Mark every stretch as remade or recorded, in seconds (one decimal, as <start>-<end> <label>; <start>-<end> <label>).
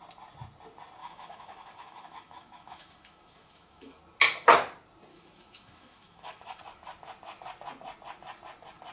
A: 0.0-1.0 recorded; 1.0-4.0 remade; 4.0-5.1 recorded; 5.1-6.6 remade; 6.6-8.9 recorded